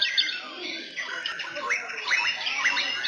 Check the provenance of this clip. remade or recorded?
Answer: recorded